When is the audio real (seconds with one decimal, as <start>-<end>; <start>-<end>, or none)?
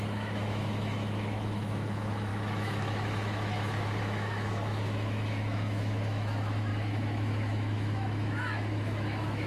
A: none